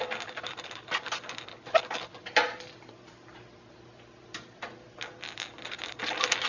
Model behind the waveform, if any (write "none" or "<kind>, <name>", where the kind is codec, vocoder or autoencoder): none